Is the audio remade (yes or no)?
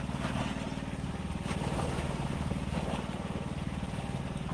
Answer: no